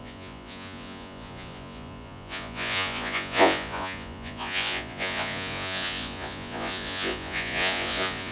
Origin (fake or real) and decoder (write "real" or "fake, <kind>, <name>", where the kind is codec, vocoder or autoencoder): fake, vocoder, Vocos